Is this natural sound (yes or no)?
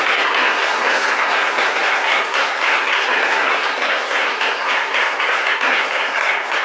no